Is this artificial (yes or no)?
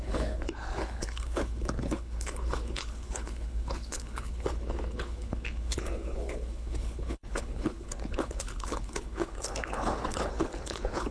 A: yes